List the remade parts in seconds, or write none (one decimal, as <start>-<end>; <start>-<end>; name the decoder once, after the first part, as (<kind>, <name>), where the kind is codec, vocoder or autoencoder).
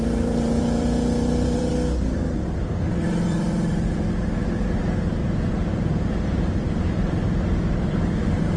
0.0-1.7 (vocoder, BigVGAN v2); 3.1-5.2; 5.7-8.6